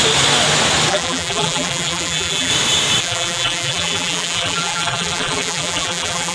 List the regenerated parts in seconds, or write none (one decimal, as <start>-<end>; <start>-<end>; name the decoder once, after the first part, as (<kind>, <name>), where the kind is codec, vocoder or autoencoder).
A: 0.9-2.5 (vocoder, BigVGAN v2); 3.0-6.3